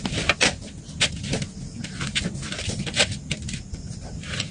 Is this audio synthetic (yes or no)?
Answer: no